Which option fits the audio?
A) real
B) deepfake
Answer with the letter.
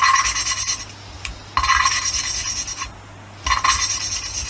A